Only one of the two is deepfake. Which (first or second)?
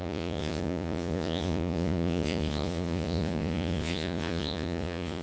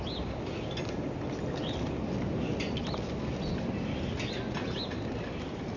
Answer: first